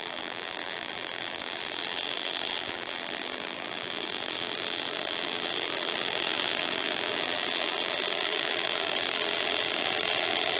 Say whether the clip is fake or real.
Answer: fake